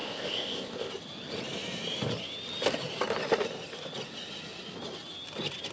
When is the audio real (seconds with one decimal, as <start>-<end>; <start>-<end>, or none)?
0.9-5.7